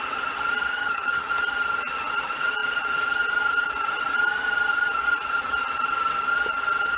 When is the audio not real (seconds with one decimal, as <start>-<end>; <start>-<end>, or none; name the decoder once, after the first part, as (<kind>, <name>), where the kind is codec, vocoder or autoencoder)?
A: 0.7-1.3 (vocoder, HiFi-GAN)